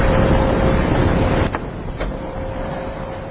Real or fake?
fake